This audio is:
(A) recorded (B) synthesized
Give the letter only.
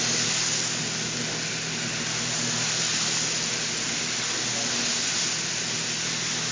A